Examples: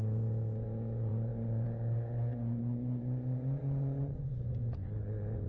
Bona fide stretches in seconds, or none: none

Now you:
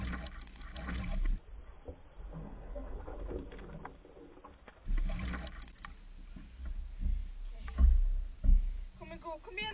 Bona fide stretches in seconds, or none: 0.0-2.4; 3.0-9.7

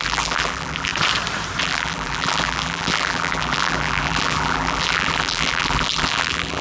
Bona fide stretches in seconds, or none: 0.9-1.6

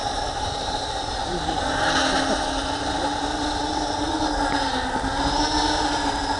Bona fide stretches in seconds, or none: 1.6-2.6; 4.1-6.4

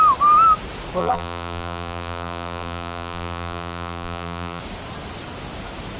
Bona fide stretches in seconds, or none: 0.0-1.0; 4.6-6.0

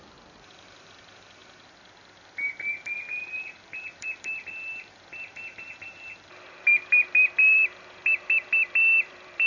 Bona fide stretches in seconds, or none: 1.4-3.1

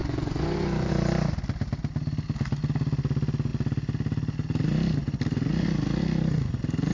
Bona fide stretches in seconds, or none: 0.9-6.9

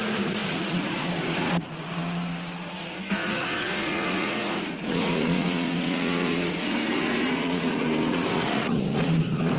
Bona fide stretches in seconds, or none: none